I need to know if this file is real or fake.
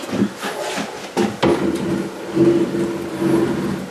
real